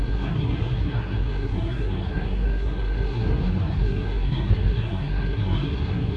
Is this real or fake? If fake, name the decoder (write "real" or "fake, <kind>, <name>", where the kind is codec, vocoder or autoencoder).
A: fake, codec, SNAC